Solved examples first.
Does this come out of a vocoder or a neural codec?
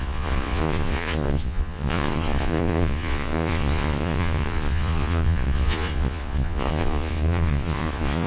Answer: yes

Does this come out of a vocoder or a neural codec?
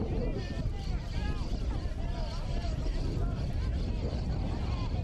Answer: no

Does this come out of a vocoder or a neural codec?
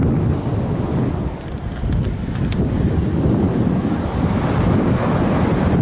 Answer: no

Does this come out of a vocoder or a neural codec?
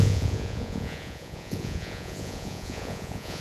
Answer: yes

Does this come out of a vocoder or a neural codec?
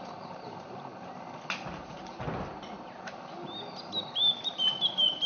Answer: no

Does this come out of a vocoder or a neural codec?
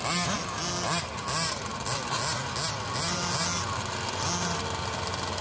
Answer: no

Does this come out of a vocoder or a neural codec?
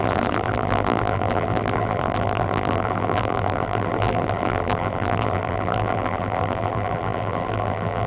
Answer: yes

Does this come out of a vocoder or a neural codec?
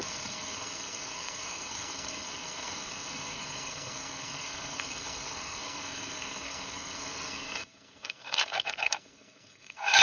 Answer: yes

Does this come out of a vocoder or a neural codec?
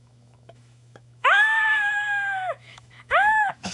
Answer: yes